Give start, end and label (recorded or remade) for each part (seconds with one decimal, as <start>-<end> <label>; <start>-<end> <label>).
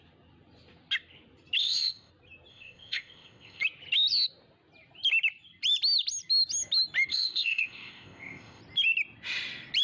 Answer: 0.0-1.6 recorded; 1.6-2.1 remade; 2.1-2.5 recorded; 2.5-3.6 remade; 3.6-7.1 recorded; 7.1-8.6 remade; 8.6-9.8 recorded